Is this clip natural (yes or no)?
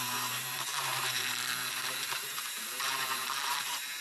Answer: no